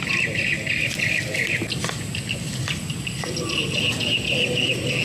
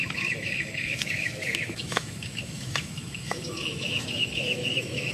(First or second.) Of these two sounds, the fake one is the second